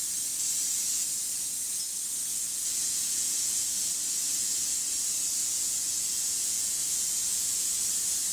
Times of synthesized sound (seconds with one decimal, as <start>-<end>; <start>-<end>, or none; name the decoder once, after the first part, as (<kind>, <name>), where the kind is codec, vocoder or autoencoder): 2.3-3.9 (vocoder, Vocos); 5.4-7.8